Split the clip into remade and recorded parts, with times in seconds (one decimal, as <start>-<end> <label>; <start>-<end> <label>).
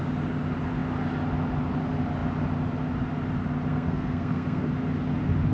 0.0-3.7 recorded; 3.7-4.7 remade; 4.7-5.5 recorded